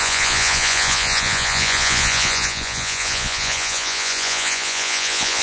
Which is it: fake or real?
fake